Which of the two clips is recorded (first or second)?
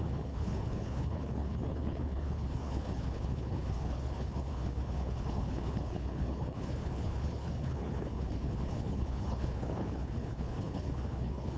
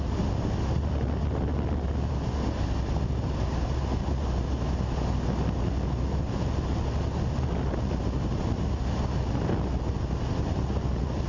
second